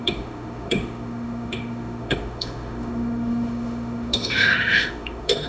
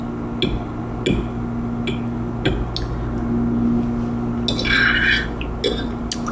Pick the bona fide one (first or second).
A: second